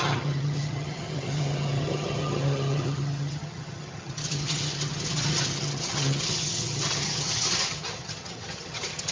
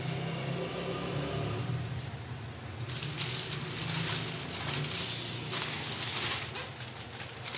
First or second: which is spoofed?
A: first